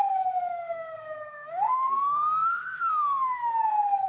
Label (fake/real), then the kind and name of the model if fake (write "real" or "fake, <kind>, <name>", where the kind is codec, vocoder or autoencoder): fake, codec, SNAC